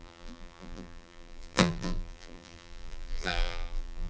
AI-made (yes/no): yes